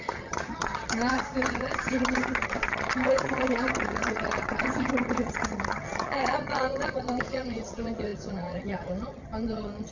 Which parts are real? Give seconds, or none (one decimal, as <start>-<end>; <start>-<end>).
none